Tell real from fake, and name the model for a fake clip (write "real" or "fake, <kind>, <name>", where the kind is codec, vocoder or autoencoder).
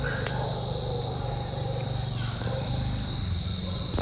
fake, vocoder, BigVGAN v2